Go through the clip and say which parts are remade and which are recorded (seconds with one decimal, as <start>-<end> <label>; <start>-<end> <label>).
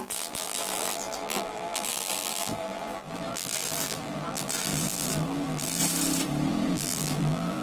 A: 0.0-5.8 remade; 5.8-6.7 recorded; 6.7-7.6 remade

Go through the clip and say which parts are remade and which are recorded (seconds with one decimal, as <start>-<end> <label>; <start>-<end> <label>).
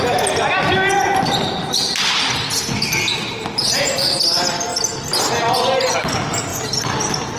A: 0.0-7.4 recorded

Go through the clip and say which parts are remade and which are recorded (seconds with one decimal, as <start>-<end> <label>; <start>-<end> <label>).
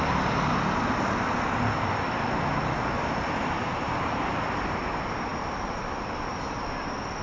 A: 0.0-3.6 recorded; 3.6-4.2 remade; 4.2-7.2 recorded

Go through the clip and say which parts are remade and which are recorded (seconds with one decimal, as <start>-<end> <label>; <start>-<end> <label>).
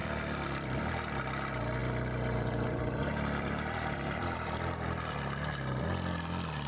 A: 0.0-0.8 remade; 0.8-1.8 recorded; 1.8-5.8 remade; 5.8-6.7 recorded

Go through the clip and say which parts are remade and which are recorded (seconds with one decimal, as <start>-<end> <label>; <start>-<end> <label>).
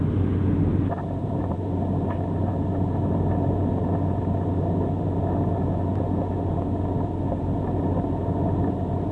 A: 0.0-0.7 recorded; 0.7-1.8 remade; 1.8-9.1 recorded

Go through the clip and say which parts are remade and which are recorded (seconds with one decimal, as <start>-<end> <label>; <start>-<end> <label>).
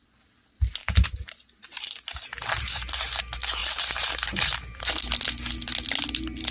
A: 0.0-0.8 recorded; 0.8-3.2 remade; 3.2-3.6 recorded; 3.6-4.8 remade; 4.8-6.5 recorded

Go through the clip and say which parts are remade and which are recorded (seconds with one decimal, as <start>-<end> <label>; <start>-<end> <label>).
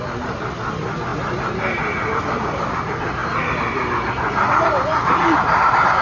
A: 0.0-6.0 remade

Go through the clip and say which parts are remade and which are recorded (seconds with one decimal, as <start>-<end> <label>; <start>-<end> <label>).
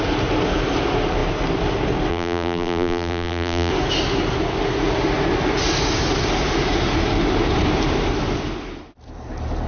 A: 0.0-2.1 recorded; 2.1-3.7 remade; 3.7-9.7 recorded